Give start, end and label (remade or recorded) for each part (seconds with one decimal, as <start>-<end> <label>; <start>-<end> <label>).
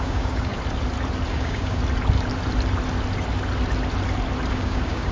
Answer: 0.0-0.5 remade; 0.5-1.3 recorded; 1.3-1.8 remade; 1.8-4.5 recorded; 4.5-5.1 remade